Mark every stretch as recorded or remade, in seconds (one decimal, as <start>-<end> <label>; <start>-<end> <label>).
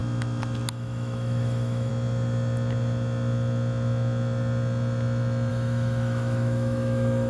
0.0-0.7 recorded; 0.7-1.9 remade; 1.9-5.5 recorded; 5.5-7.3 remade